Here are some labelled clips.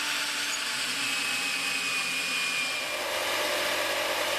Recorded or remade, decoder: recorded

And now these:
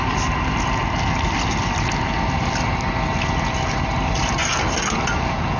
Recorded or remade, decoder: recorded